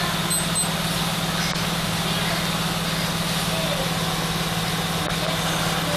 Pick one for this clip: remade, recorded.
recorded